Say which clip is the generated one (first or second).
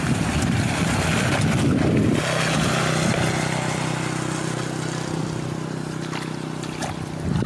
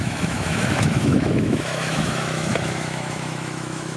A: second